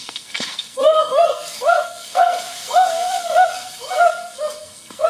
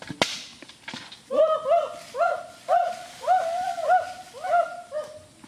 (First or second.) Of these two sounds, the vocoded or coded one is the first